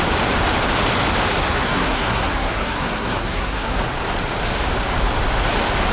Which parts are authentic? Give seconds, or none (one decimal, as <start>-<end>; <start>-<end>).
0.0-1.3; 3.8-5.9